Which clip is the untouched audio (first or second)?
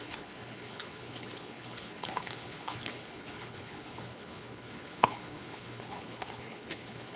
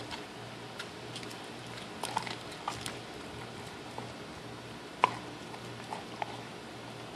second